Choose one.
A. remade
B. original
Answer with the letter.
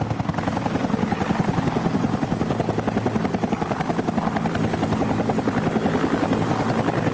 B